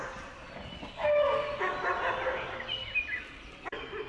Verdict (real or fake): real